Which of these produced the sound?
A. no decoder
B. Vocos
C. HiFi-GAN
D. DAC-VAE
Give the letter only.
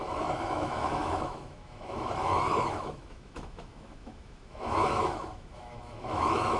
D